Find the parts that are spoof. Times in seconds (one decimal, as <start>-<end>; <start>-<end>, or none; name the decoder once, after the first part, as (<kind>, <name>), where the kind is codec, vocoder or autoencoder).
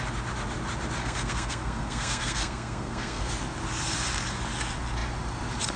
1.0-3.3 (codec, SNAC)